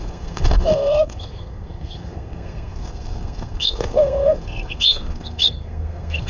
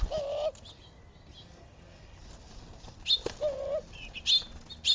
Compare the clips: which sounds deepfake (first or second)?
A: first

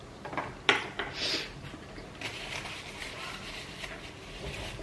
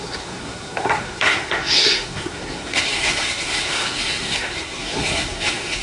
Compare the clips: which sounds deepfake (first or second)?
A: second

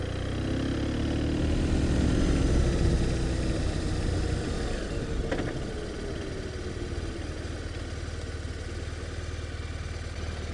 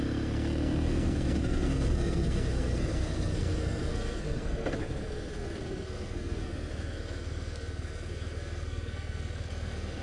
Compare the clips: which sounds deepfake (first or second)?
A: second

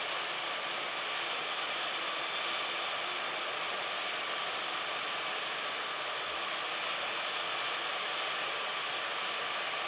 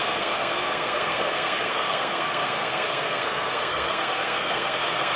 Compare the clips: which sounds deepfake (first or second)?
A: second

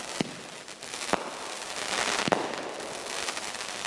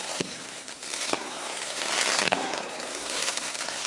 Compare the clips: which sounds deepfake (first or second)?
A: second